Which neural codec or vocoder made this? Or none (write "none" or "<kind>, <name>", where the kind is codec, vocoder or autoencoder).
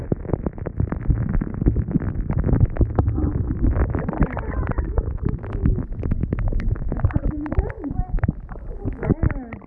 none